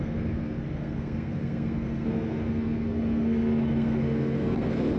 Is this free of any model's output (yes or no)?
no